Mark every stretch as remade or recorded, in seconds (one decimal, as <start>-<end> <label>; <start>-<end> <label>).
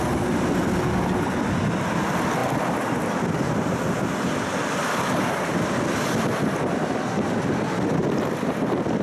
0.0-9.0 recorded